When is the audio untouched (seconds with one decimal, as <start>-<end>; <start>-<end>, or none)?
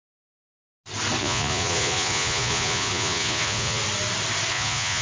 0.0-1.2; 3.8-4.5